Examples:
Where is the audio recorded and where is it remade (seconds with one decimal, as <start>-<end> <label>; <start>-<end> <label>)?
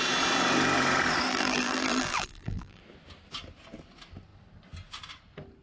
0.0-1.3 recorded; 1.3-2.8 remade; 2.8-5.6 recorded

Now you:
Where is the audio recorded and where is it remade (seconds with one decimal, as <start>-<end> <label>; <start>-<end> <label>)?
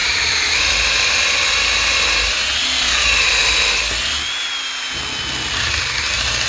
0.0-6.5 recorded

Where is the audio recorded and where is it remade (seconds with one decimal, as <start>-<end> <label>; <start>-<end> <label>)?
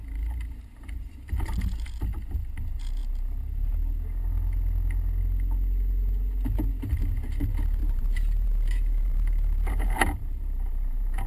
0.0-1.5 remade; 1.5-7.8 recorded; 7.8-11.3 remade